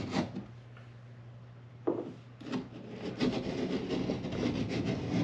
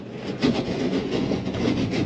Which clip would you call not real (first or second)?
second